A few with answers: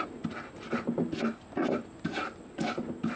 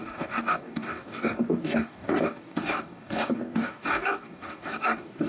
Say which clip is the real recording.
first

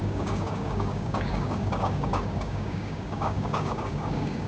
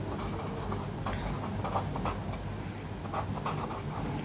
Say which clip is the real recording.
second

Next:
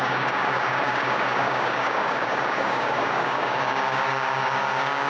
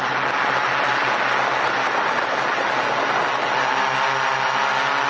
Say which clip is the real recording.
second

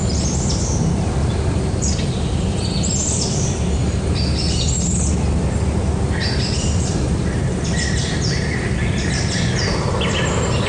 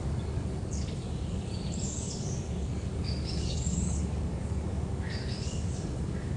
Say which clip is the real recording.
first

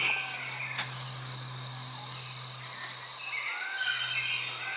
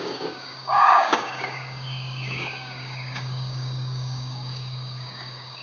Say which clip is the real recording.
first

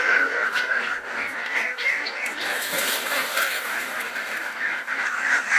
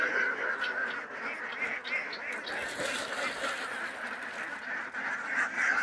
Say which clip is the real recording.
second